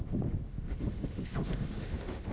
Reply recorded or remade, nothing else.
remade